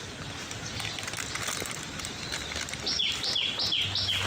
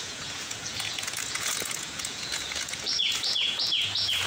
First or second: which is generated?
second